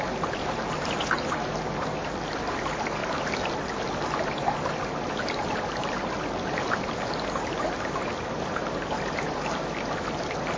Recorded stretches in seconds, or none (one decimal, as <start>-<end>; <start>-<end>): 0.0-10.6

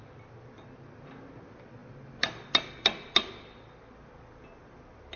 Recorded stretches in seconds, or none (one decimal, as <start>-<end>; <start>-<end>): 0.0-5.2

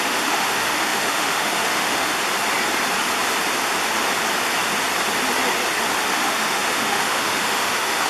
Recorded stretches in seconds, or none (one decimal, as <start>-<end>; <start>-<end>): 2.1-6.1

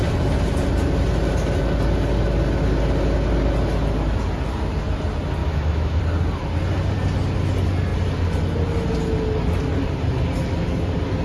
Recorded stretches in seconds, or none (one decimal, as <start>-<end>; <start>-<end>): 0.0-5.4; 6.0-11.2